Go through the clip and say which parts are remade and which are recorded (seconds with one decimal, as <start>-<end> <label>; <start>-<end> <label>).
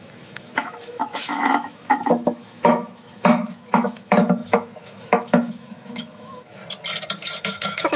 0.0-6.6 remade; 6.6-7.4 recorded; 7.4-8.0 remade